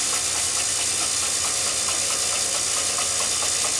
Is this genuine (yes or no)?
yes